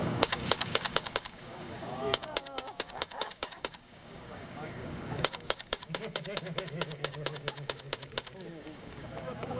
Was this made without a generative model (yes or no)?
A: no